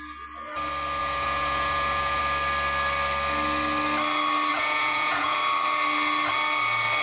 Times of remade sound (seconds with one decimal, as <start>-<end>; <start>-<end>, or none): 1.0-2.2; 4.5-5.4